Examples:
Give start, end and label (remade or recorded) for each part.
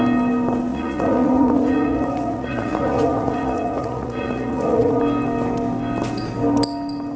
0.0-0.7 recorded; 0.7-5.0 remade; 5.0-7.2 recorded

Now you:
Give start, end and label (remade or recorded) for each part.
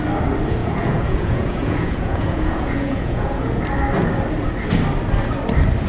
0.0-0.6 recorded; 0.6-3.6 remade; 3.6-5.9 recorded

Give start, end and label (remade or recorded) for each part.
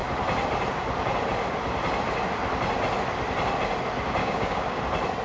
0.0-4.2 recorded; 4.2-4.8 remade; 4.8-5.2 recorded